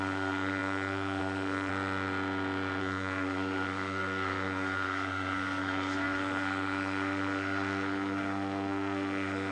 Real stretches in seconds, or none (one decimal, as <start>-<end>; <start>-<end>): 1.7-2.8